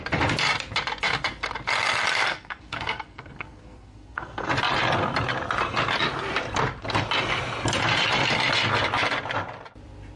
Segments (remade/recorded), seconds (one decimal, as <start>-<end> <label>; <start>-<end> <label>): 0.0-2.3 recorded; 2.3-4.5 remade; 4.5-10.2 recorded